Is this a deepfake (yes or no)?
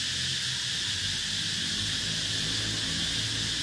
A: no